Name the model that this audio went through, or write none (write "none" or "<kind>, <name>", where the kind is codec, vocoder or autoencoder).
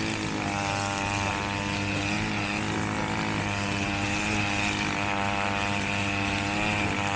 none